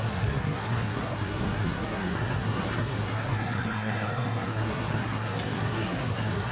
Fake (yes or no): yes